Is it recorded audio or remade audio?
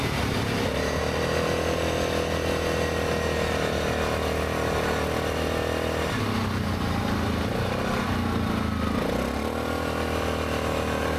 recorded